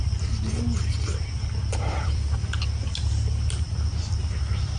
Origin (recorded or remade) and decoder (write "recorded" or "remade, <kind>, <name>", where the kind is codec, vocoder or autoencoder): recorded